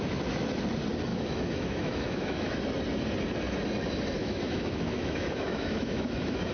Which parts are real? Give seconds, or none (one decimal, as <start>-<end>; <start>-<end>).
0.0-1.1; 2.6-4.2